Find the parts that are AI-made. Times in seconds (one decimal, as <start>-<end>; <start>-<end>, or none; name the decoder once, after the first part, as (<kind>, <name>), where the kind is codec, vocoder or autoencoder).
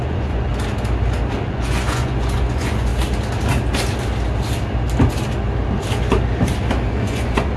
0.0-0.5 (vocoder, Vocos); 1.4-2.9; 6.9-7.6